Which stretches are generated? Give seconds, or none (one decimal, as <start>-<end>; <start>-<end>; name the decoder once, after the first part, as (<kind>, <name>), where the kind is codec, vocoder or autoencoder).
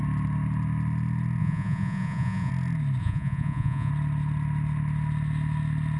1.4-2.5 (vocoder, Vocos); 3.0-3.9